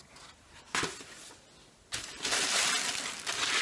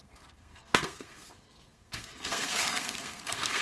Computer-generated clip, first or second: second